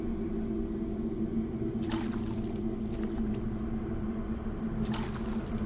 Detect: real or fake real